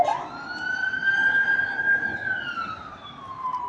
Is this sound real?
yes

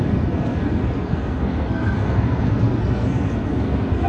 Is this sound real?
no